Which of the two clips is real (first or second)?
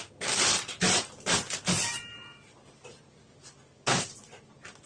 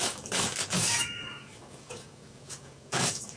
first